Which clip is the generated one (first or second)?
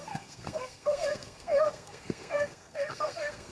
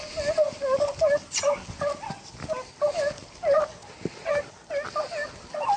first